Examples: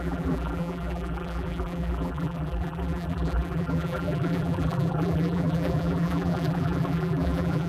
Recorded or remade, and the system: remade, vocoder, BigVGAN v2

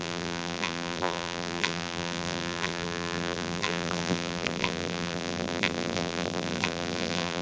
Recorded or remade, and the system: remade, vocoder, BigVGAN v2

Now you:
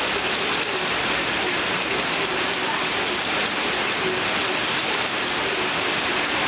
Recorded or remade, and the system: recorded